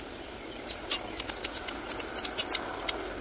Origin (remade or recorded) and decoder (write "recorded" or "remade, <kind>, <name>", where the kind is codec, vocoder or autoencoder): recorded